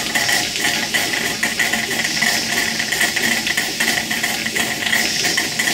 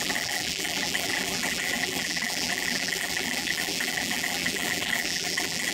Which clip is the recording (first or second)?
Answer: first